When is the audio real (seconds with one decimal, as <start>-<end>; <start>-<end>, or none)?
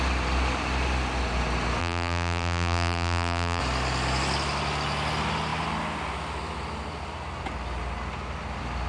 0.0-1.8; 3.6-8.9